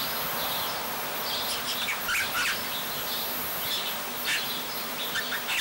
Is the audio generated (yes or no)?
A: no